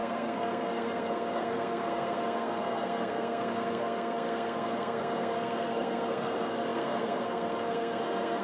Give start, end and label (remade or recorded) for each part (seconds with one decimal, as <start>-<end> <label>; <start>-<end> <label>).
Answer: 0.0-8.4 remade